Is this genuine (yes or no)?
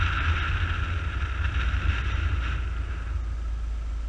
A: yes